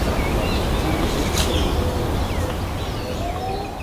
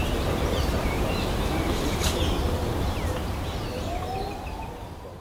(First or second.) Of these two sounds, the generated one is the second